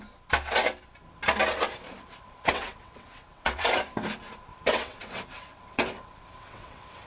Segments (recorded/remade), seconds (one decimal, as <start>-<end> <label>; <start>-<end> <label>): 0.0-1.9 recorded; 1.9-3.7 remade; 3.7-4.5 recorded; 4.5-7.1 remade